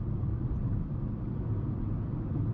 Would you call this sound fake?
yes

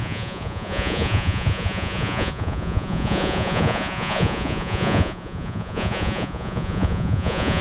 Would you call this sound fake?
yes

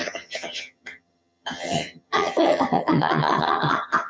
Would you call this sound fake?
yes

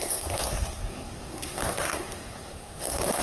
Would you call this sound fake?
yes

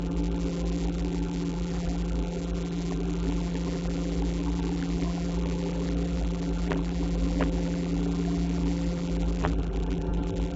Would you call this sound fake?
yes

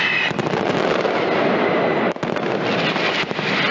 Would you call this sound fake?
no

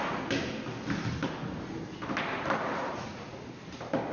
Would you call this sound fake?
no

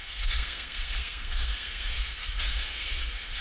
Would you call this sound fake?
yes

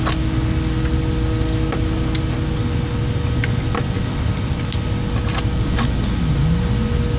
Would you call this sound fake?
no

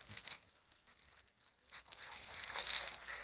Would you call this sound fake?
yes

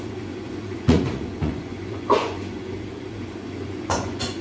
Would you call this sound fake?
yes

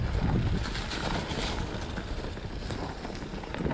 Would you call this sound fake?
no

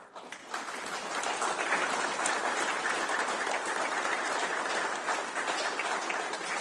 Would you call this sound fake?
no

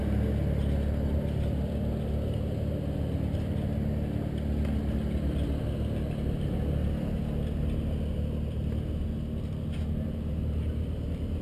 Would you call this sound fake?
no